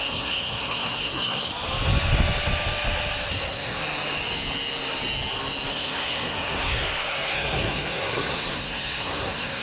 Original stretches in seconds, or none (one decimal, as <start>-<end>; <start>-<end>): 1.5-3.3; 3.8-5.7